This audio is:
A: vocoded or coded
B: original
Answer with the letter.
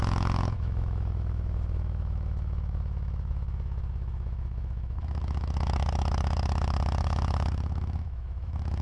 A